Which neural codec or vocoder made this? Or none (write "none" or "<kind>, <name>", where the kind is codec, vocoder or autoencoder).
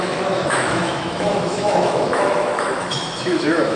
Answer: autoencoder, DAC-VAE